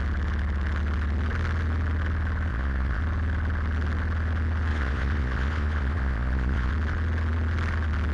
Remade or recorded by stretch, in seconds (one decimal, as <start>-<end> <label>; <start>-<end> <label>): 0.0-2.5 recorded; 2.5-3.0 remade; 3.0-4.7 recorded; 4.7-6.7 remade; 6.7-8.1 recorded